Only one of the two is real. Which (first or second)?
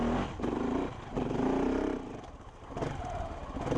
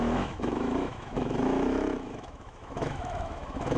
first